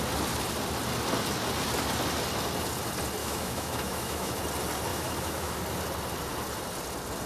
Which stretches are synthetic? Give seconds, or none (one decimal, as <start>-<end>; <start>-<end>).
3.2-4.4; 4.9-5.6